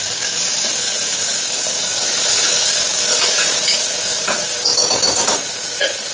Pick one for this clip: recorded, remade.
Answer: remade